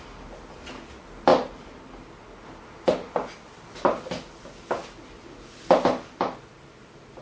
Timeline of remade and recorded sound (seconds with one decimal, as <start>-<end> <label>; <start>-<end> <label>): 0.0-7.2 recorded